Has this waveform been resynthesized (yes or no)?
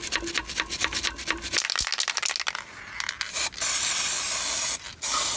no